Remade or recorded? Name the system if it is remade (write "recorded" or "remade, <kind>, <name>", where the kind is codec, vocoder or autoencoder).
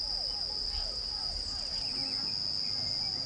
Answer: recorded